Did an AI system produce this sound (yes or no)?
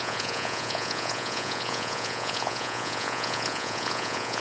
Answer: yes